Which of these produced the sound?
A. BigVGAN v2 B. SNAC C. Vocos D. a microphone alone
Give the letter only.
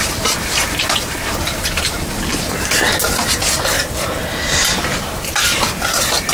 D